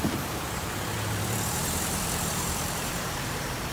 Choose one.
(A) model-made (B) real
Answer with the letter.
A